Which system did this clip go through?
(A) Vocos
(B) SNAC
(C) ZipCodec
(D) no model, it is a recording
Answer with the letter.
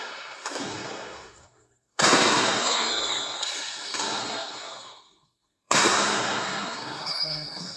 B